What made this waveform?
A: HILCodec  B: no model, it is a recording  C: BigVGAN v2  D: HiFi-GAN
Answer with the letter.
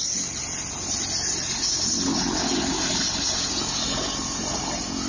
B